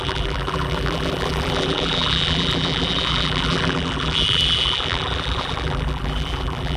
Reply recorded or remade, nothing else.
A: remade